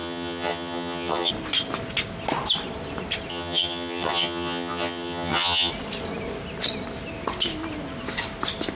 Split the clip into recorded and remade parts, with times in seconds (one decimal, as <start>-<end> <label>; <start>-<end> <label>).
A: 0.0-1.3 remade; 1.3-3.3 recorded; 3.3-5.7 remade; 5.7-8.7 recorded